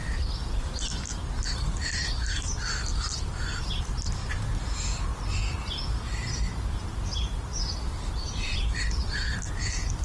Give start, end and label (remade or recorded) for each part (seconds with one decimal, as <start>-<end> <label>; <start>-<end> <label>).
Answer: 0.0-10.0 recorded